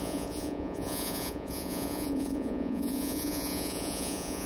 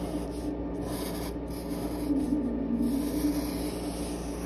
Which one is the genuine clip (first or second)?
second